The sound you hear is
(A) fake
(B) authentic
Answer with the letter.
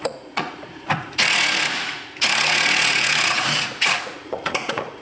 A